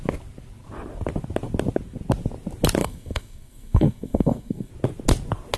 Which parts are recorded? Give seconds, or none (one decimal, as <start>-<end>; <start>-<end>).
0.0-2.8; 4.7-5.6